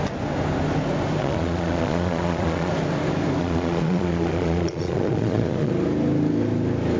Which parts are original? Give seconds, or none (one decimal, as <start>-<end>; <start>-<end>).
0.0-1.2; 2.7-3.4; 5.7-7.0